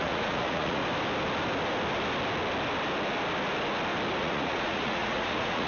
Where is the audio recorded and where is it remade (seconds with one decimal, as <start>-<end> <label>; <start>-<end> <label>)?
0.0-0.8 remade; 0.8-4.2 recorded; 4.2-5.7 remade